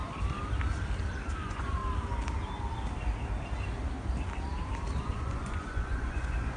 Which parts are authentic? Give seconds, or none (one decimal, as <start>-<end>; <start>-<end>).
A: 0.0-1.4; 1.8-5.0